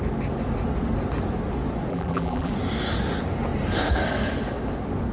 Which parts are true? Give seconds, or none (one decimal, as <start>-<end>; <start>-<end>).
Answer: 0.0-1.9; 2.5-5.1